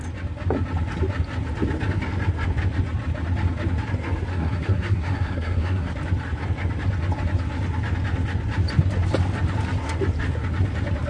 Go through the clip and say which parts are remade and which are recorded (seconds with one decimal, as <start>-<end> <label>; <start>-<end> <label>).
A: 0.0-4.3 recorded; 4.3-5.9 remade; 5.9-11.1 recorded